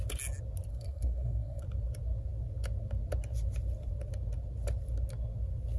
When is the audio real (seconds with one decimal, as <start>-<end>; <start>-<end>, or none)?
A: 0.0-0.7; 1.6-5.8

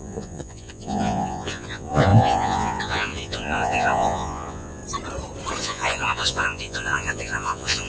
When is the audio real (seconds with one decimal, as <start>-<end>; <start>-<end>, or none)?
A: 4.8-5.6

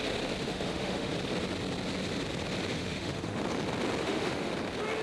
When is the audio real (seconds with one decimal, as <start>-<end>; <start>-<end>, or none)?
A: 0.0-0.4; 1.1-2.8; 3.4-4.0; 4.5-5.0

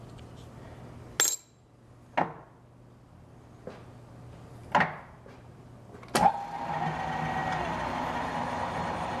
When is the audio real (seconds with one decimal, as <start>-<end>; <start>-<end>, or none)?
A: 0.0-9.2

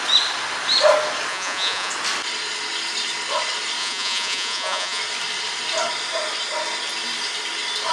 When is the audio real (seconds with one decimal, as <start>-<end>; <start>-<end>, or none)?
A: 0.0-1.3; 1.9-3.8; 5.0-7.9

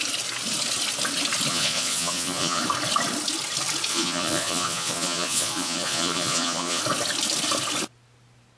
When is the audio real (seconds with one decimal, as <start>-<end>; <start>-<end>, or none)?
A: 0.0-1.5; 2.6-3.9; 6.8-8.6

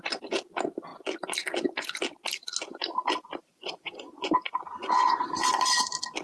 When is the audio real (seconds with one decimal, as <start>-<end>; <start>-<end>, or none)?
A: 0.0-3.5; 5.2-6.2